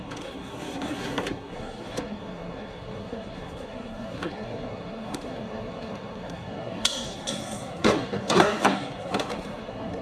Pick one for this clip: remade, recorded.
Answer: remade